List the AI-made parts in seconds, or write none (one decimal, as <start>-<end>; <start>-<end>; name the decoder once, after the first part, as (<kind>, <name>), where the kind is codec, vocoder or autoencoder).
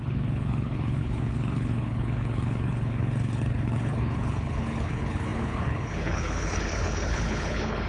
0.0-7.9 (codec, HILCodec)